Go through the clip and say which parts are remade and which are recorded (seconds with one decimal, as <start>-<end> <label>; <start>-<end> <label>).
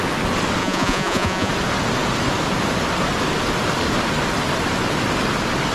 0.0-0.6 recorded; 0.6-1.5 remade; 1.5-5.7 recorded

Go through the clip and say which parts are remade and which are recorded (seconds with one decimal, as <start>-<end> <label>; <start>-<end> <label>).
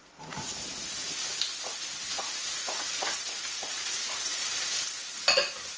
0.0-0.9 remade; 0.9-2.1 recorded; 2.1-4.5 remade; 4.5-5.8 recorded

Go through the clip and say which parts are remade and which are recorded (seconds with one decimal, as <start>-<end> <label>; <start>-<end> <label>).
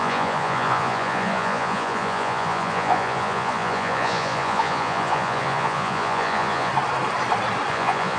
0.0-6.7 remade; 6.7-7.7 recorded; 7.7-8.2 remade